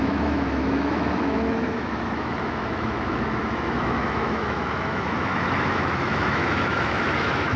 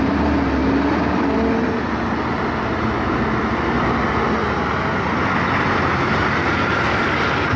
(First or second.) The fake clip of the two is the first